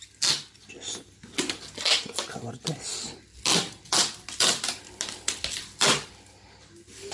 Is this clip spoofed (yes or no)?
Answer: no